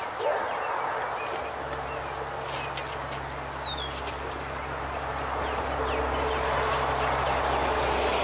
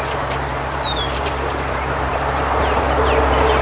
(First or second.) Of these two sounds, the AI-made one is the second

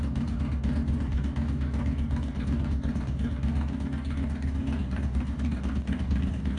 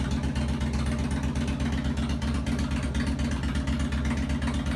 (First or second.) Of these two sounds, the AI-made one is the first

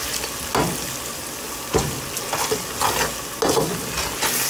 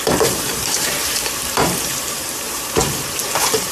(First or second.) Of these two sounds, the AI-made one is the second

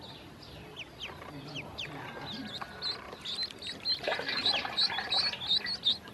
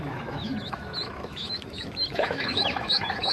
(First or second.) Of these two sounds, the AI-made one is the second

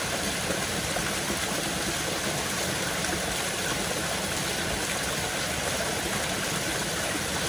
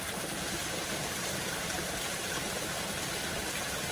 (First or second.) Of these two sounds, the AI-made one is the second